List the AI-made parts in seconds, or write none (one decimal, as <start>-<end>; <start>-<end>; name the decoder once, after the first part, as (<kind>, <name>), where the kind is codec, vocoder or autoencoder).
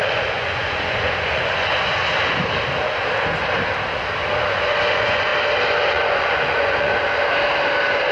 0.0-2.0 (vocoder, Vocos); 4.5-5.3; 5.9-6.9